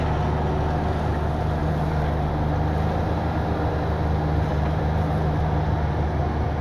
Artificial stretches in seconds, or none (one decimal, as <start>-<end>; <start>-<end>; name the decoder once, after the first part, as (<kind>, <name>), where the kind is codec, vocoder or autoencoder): 1.6-2.3 (vocoder, BigVGAN v2); 4.5-5.4